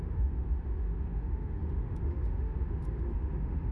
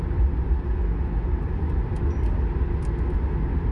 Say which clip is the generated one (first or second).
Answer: first